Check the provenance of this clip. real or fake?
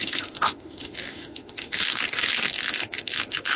fake